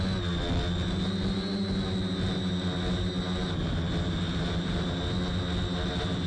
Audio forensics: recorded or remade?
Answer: recorded